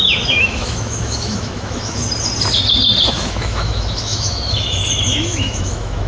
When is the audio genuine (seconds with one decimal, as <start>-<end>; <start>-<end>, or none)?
2.0-3.1